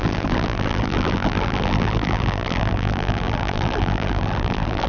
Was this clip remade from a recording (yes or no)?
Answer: yes